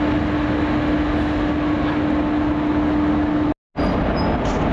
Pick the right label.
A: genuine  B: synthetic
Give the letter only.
A